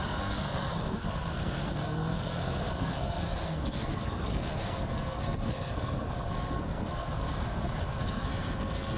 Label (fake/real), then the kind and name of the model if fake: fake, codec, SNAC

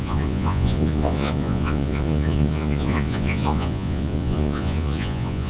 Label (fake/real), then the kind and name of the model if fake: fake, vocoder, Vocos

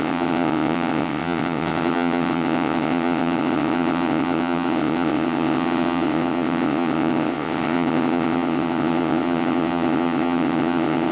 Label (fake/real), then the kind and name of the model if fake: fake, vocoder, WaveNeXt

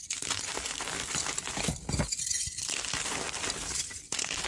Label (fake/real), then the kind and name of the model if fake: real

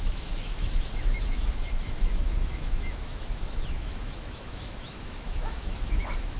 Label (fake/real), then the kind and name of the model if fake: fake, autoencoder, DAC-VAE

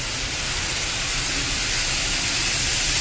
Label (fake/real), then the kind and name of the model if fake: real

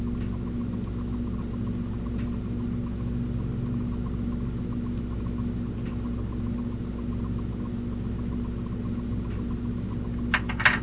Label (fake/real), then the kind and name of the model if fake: real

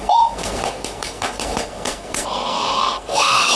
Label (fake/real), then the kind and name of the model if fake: fake, codec, SNAC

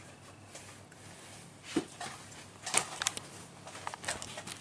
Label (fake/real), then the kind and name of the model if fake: real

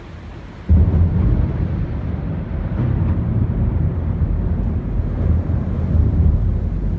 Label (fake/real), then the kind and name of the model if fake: fake, vocoder, BigVGAN v2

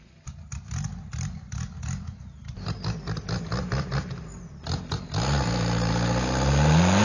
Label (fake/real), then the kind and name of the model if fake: real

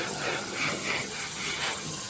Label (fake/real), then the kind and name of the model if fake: fake, vocoder, HiFi-GAN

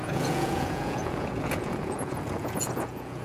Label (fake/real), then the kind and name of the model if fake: fake, vocoder, Vocos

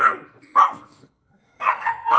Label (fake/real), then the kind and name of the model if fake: fake, codec, SNAC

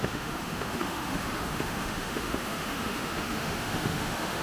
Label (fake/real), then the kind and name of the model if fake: fake, autoencoder, DAC-VAE